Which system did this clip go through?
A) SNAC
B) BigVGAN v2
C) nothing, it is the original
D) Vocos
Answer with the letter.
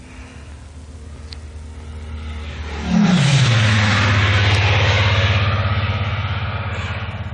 C